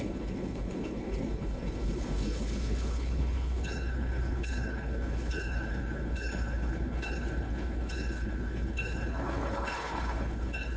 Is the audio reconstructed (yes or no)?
yes